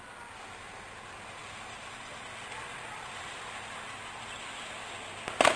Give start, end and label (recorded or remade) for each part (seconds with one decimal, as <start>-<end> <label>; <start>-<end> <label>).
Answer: 0.0-5.6 recorded